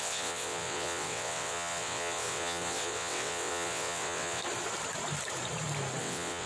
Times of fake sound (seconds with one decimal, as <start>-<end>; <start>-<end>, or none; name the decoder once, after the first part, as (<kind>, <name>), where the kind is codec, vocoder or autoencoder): 0.0-4.4 (vocoder, WaveNeXt); 6.0-6.5